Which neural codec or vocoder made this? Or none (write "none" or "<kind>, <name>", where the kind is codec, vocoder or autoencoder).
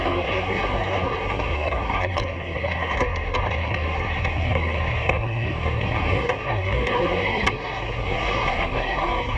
codec, SNAC